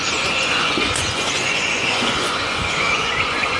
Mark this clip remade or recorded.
remade